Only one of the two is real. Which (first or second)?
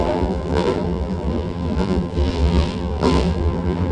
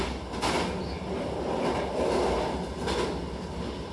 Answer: second